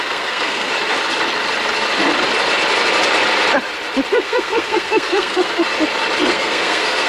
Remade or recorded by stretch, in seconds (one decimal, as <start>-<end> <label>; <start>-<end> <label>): 0.0-0.7 remade; 0.7-4.1 recorded; 4.1-5.6 remade; 5.6-6.3 recorded; 6.3-7.1 remade